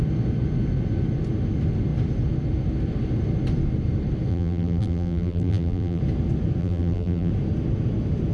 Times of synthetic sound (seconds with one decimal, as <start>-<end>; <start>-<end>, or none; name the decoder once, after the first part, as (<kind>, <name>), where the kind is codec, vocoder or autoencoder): 4.3-6.0 (vocoder, BigVGAN v2); 6.6-7.3